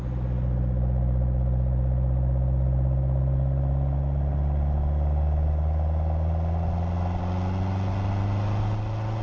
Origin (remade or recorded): recorded